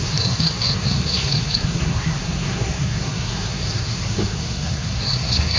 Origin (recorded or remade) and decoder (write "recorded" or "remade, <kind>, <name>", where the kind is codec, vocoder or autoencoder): remade, codec, SNAC